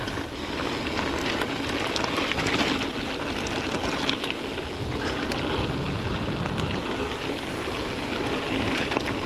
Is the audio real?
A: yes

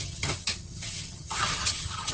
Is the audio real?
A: no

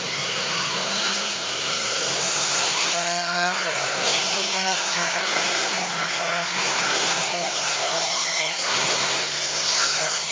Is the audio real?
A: no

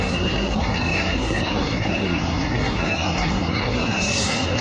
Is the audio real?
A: no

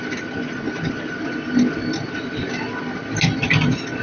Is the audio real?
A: yes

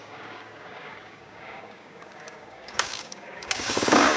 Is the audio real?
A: no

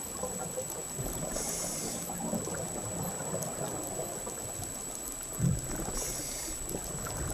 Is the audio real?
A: no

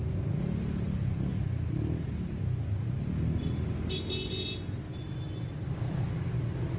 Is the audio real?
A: yes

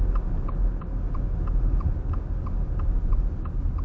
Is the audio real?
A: yes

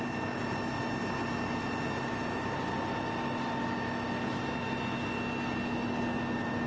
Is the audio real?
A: yes